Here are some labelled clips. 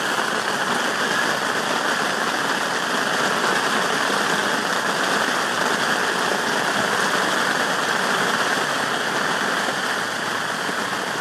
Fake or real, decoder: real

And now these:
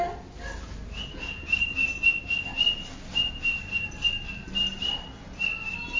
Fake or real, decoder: real